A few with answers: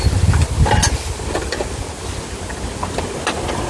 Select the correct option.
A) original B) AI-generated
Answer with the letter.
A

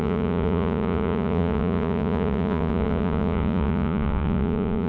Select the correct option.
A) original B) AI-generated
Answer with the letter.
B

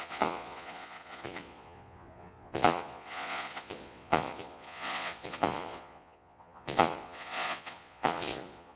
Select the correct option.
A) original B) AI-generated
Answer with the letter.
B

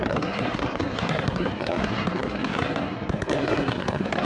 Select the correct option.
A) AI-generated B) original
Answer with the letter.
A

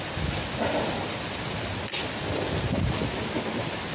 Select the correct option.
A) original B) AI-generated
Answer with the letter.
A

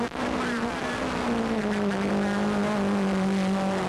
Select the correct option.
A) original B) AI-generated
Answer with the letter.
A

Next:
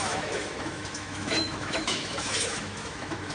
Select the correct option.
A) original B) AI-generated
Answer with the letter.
B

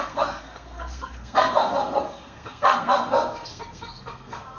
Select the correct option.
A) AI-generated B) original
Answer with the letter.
A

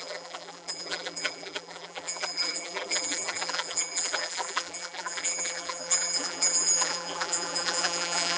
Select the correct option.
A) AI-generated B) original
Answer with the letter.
A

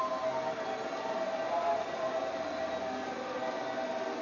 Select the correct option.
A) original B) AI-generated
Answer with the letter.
A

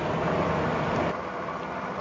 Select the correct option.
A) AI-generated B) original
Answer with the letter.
B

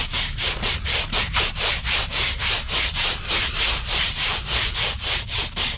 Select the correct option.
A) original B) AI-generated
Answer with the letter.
B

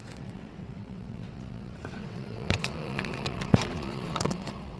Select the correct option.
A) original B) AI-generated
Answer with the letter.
B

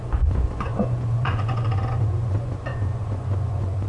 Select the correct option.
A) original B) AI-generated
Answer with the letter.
B